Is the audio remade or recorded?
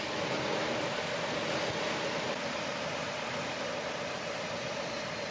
remade